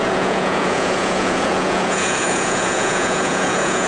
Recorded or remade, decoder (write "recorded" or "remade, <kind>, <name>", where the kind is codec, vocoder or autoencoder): remade, vocoder, Vocos